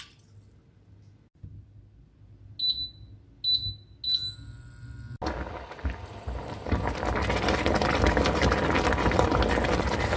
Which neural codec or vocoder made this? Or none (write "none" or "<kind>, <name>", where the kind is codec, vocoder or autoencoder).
none